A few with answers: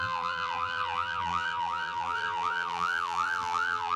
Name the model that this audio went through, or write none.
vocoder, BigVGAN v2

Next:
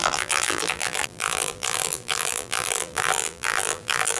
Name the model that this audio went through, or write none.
vocoder, BigVGAN v2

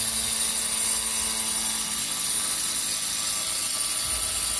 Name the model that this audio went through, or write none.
none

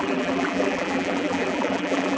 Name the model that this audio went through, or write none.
vocoder, BigVGAN v2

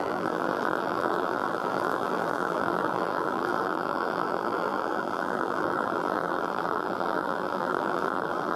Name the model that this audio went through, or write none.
vocoder, BigVGAN v2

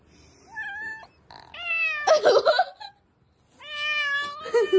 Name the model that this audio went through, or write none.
none